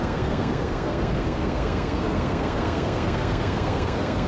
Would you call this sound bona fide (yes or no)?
no